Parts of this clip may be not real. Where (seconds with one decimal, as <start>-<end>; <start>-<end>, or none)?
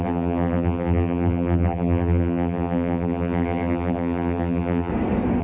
0.0-4.9